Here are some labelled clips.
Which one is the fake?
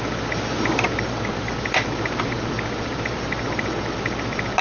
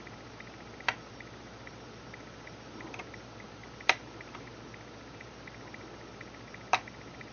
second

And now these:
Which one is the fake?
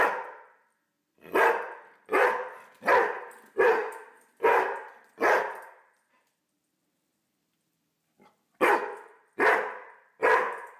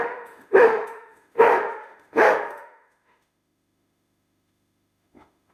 second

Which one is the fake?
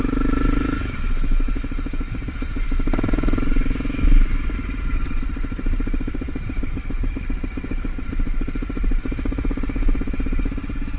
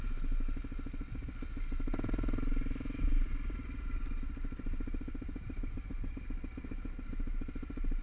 first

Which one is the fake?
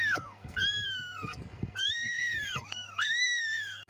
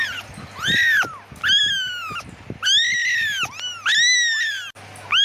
first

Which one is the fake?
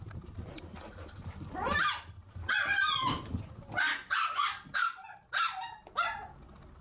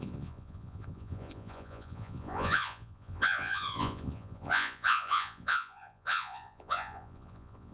second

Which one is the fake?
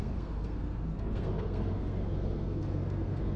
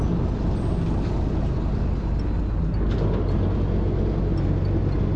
first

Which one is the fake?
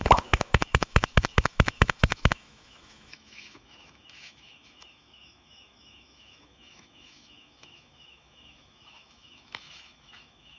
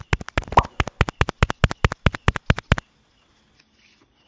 first